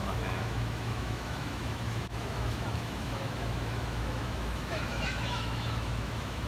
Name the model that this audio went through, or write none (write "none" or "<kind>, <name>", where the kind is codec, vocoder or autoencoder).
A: autoencoder, DAC-VAE